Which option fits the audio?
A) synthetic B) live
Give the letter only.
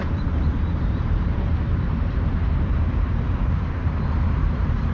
A